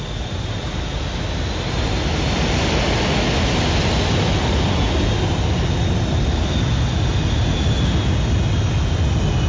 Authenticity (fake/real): real